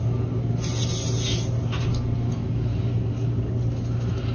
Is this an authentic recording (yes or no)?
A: yes